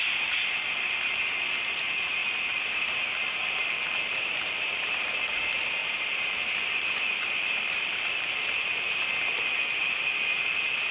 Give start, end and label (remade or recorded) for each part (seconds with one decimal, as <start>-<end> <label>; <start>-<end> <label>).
0.0-2.2 recorded; 2.2-4.8 remade; 4.8-5.8 recorded; 5.8-9.0 remade; 9.0-10.9 recorded